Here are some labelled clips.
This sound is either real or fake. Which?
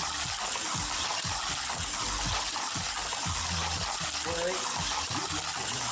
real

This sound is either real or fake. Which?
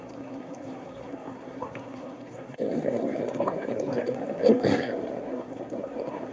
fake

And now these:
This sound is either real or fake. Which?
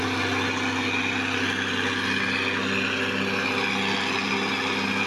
real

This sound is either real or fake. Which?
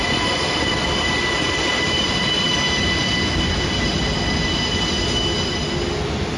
real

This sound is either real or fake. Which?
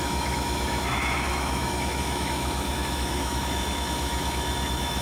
fake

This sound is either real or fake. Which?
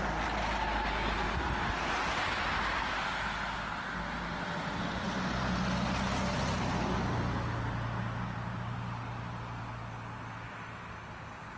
real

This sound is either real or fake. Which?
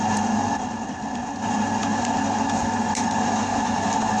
real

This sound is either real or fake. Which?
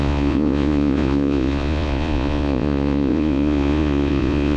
fake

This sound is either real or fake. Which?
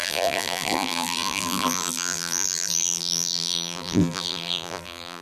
fake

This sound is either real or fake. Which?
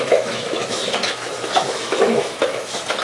fake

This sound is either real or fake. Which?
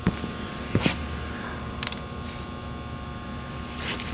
real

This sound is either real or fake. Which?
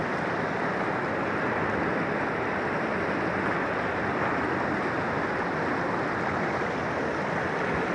real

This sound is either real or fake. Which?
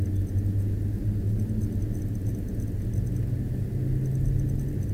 real